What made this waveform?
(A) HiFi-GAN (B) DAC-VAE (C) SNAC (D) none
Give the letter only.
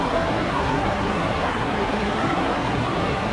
C